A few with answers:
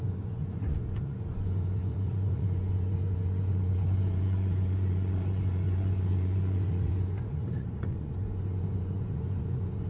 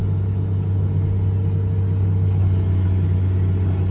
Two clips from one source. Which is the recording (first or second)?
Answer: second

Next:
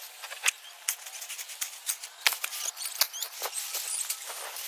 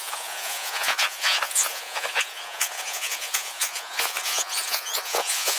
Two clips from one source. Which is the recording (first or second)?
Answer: first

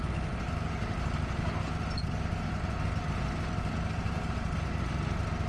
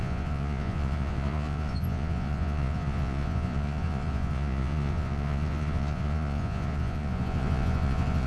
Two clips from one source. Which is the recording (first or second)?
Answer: first